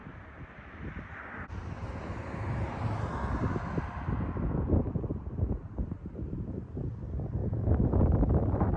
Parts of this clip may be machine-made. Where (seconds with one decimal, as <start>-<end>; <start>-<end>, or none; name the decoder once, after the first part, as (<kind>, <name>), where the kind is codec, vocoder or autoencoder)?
none